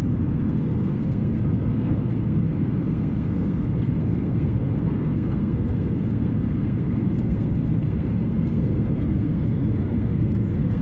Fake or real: fake